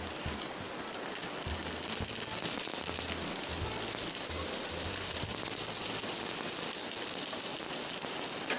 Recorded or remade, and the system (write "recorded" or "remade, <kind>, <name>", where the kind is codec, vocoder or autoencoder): recorded